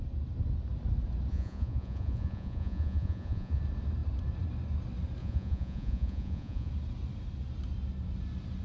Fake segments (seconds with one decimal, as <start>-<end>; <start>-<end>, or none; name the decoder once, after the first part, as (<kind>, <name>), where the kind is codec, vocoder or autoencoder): 1.3-3.6 (vocoder, Vocos); 5.2-6.7